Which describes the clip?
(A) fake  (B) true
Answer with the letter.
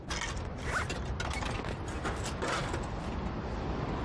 B